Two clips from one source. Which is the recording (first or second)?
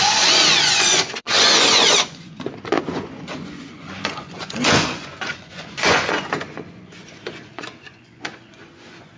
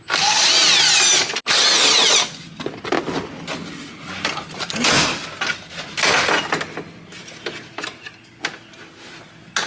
second